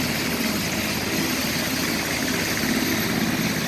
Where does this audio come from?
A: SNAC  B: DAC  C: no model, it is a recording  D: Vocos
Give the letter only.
C